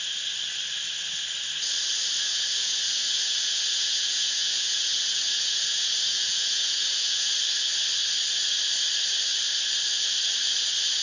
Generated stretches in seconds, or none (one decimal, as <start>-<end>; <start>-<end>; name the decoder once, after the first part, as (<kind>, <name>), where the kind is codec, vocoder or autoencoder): 2.3-7.3 (vocoder, Vocos)